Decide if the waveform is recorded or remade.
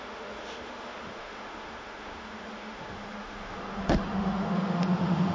remade